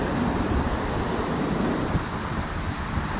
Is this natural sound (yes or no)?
yes